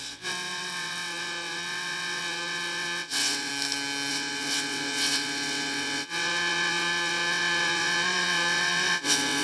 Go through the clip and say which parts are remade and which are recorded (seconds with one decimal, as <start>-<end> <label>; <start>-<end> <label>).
0.0-3.5 remade; 3.5-4.1 recorded; 4.1-9.4 remade